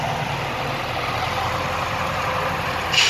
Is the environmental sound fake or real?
real